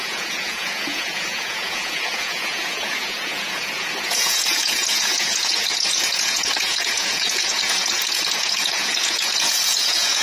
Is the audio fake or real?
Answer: fake